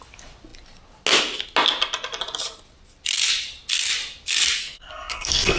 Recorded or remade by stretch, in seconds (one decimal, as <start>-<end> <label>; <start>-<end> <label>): 0.0-4.6 recorded; 4.6-5.6 remade